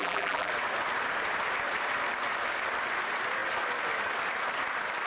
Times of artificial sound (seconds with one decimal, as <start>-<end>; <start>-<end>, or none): 0.0-0.5